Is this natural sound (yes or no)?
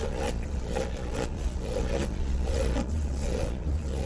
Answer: no